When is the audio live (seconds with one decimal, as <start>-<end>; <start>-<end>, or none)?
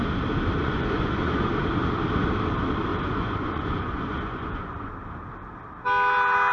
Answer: 0.0-0.6; 1.6-2.9; 4.9-6.5